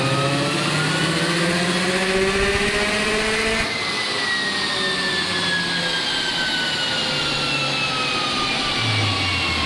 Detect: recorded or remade recorded